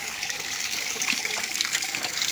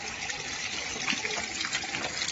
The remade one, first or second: first